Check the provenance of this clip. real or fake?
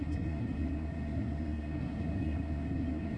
fake